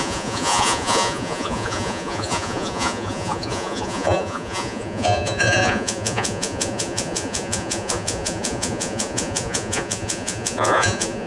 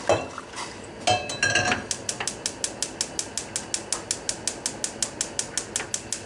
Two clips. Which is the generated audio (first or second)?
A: first